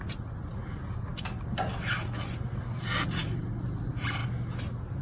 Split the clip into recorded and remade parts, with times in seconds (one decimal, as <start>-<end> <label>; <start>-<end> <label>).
0.0-1.1 remade; 1.1-2.5 recorded; 2.5-4.2 remade; 4.2-5.0 recorded